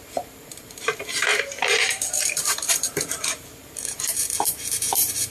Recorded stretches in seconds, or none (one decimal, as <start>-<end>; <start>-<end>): none